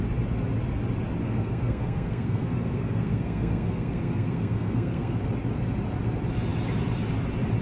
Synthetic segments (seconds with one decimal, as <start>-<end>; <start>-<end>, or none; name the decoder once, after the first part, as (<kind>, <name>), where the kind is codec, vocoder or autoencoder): 1.2-5.2 (codec, SNAC)